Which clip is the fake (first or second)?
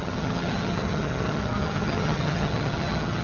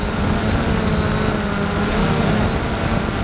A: first